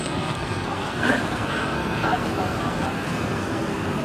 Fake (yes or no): yes